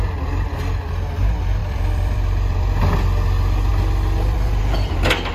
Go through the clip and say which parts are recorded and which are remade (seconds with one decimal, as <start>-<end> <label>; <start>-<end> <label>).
0.0-1.6 recorded; 1.6-2.8 remade; 2.8-3.7 recorded; 3.7-4.6 remade; 4.6-5.3 recorded